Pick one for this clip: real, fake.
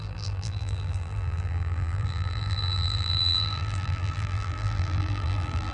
fake